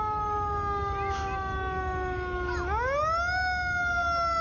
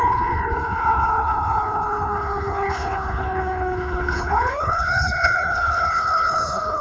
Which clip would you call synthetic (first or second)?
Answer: second